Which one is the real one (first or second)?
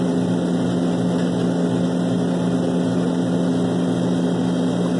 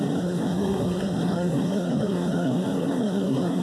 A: first